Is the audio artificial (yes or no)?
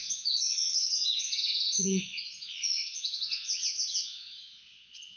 yes